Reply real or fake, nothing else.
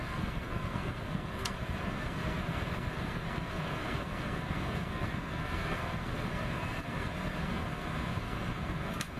fake